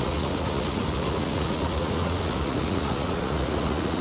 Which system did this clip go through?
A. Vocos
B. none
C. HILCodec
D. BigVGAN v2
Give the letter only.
A